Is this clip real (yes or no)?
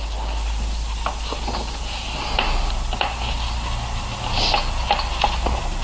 yes